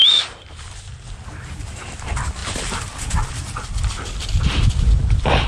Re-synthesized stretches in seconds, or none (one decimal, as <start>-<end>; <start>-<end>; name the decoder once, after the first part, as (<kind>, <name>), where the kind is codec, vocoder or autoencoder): none